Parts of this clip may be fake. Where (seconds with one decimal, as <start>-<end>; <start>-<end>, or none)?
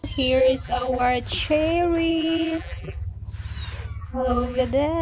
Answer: 0.4-1.0; 2.1-3.1; 4.0-4.6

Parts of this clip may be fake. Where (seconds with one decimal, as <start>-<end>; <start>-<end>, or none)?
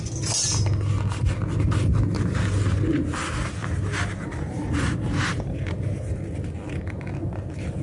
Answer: 3.6-6.2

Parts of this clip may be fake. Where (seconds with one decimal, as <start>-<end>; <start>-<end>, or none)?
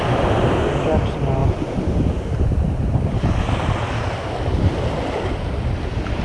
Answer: none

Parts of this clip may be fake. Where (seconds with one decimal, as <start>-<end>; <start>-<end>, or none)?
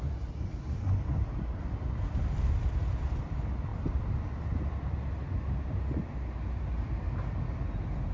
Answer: 3.7-4.7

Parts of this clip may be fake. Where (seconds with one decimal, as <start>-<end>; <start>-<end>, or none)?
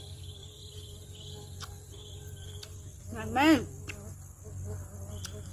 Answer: 0.4-1.1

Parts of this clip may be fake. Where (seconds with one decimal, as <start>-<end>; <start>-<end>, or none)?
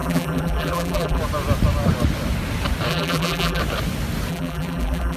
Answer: 0.0-1.2; 2.9-3.6; 4.3-5.2